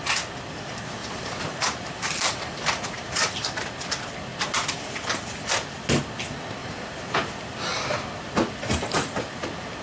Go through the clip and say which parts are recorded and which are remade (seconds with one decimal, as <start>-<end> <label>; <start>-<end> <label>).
0.0-1.0 recorded; 1.0-3.3 remade; 3.3-6.6 recorded; 6.6-7.3 remade; 7.3-9.8 recorded